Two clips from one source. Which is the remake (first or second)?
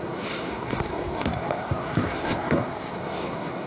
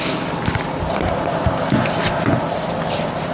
first